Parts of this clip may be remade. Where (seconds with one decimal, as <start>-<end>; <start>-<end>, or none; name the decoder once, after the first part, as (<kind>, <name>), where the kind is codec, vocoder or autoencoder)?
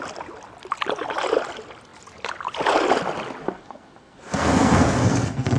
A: 3.4-5.6 (codec, SNAC)